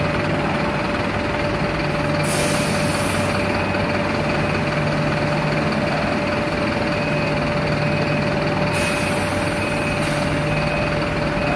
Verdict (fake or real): real